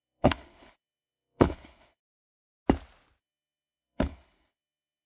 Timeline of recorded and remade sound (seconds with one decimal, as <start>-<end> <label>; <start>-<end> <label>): 0.0-2.0 remade; 2.0-3.2 recorded; 3.2-5.1 remade